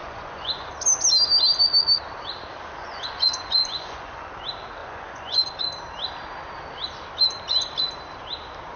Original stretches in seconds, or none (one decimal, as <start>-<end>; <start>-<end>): 0.7-2.8; 4.3-4.8; 5.5-8.8